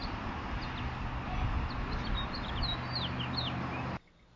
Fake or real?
real